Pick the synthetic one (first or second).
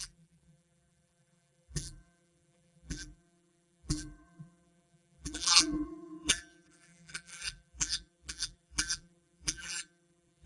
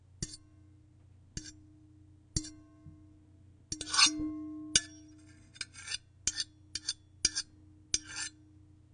first